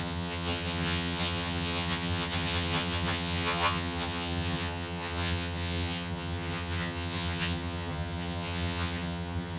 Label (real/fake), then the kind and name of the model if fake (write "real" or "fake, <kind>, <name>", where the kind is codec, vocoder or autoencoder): fake, vocoder, HiFi-GAN